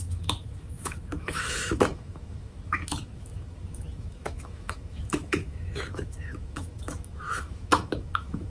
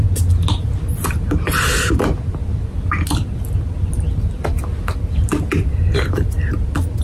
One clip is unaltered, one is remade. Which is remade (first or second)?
first